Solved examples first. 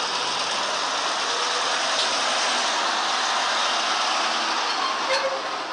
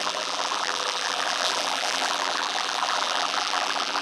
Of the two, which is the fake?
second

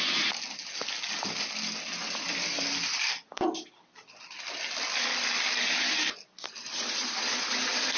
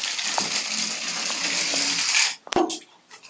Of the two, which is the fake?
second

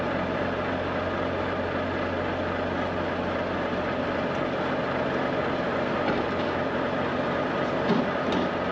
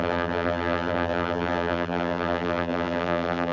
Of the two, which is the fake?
second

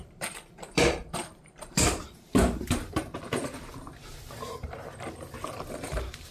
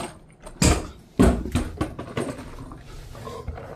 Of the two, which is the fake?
first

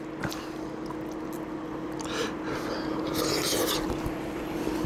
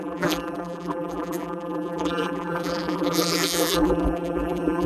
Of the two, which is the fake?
second